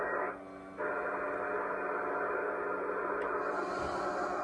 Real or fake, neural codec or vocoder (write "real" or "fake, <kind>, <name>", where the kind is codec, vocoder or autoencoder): real